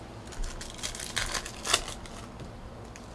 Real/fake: real